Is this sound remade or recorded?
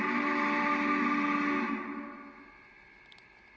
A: recorded